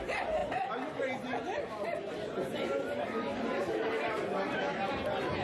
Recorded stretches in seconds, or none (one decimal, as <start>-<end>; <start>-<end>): 0.0-5.4